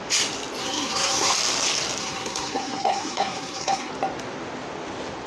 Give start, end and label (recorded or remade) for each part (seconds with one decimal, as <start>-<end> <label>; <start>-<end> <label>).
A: 0.0-0.6 recorded; 0.6-1.3 remade; 1.3-2.0 recorded; 2.0-3.9 remade; 3.9-5.3 recorded